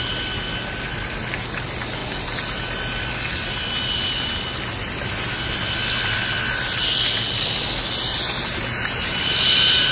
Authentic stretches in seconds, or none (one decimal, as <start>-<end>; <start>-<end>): 0.0-8.1